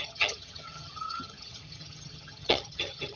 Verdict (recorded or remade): remade